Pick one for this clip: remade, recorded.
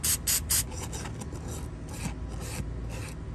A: recorded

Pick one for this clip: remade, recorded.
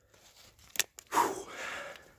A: recorded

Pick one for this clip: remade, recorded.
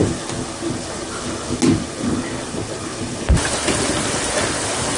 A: recorded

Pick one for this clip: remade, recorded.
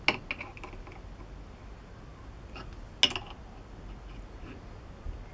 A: recorded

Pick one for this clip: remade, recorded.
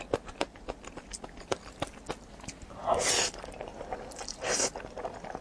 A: recorded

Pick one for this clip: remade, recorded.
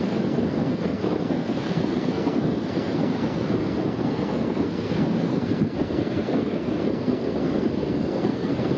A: remade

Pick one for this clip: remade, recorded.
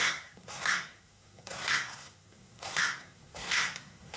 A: remade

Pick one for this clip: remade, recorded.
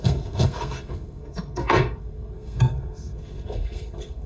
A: remade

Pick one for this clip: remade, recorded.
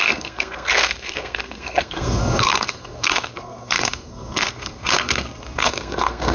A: remade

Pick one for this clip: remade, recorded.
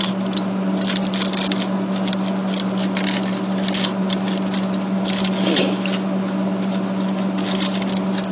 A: recorded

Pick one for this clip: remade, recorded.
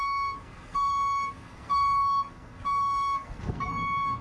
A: remade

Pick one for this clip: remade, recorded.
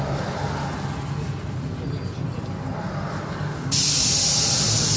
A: recorded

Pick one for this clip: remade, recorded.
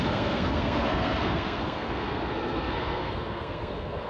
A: remade